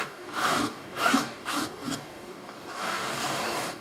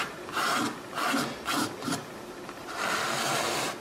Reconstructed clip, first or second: first